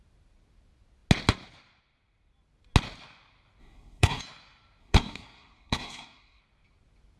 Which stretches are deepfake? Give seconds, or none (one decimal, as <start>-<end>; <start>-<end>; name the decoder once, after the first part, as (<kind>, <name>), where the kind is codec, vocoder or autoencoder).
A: 3.6-4.2 (codec, SNAC); 4.8-6.4